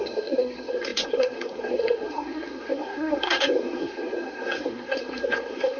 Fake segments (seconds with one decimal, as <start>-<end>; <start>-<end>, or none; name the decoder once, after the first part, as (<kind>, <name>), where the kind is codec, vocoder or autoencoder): 0.0-5.8 (codec, SNAC)